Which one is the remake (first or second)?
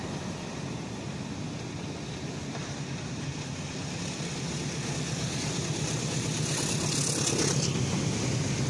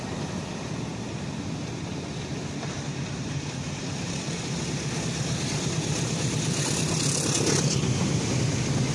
second